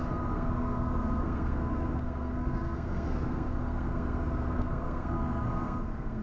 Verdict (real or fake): fake